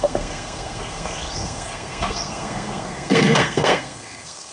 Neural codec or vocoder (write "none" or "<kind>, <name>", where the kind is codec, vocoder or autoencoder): codec, SNAC